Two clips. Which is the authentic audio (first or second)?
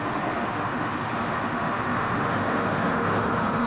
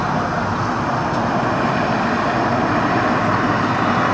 second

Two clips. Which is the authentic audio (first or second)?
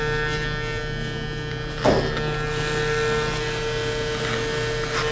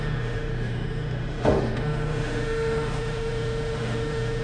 first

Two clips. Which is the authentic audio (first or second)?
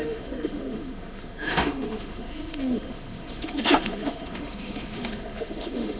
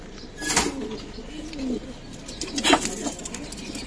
second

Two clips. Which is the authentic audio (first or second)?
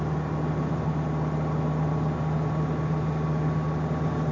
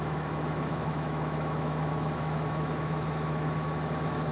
first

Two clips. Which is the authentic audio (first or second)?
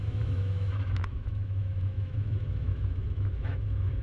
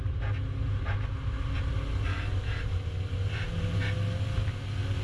second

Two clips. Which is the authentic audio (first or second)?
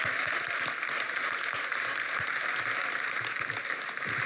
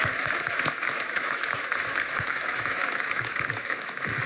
first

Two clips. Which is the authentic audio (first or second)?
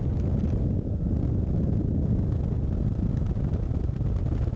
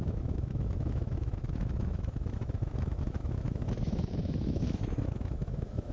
first